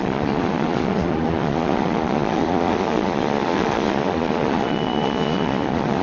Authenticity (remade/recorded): remade